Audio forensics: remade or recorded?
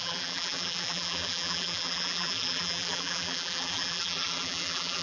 remade